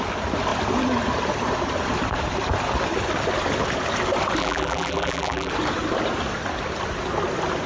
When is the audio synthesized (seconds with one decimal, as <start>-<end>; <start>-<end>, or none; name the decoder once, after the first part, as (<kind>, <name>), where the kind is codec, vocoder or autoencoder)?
4.4-5.5 (vocoder, BigVGAN v2)